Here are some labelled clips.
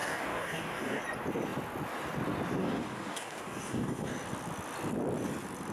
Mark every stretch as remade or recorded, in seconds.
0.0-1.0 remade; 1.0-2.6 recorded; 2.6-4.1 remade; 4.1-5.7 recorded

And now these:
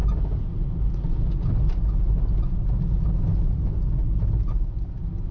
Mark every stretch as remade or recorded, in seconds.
0.0-5.3 recorded

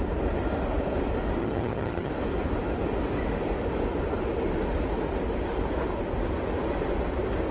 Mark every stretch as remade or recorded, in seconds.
0.0-1.4 recorded; 1.4-2.1 remade; 2.1-7.5 recorded

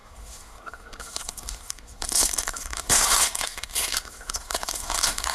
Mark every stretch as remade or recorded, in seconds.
0.0-5.3 remade

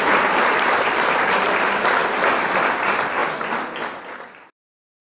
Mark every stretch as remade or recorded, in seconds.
0.0-2.0 remade; 2.0-2.8 recorded; 2.8-3.2 remade; 3.2-4.0 recorded; 4.0-5.0 remade